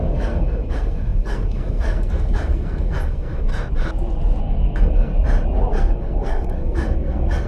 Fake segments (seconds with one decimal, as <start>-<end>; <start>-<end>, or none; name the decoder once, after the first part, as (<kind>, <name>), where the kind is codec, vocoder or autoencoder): 0.0-3.5 (codec, SNAC); 4.4-5.1; 5.7-7.5